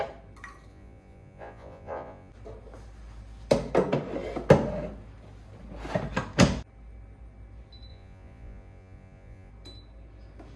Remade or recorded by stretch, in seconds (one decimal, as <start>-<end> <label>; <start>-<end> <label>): 0.0-0.7 recorded; 0.7-2.3 remade; 2.3-7.9 recorded; 7.9-9.5 remade; 9.5-10.6 recorded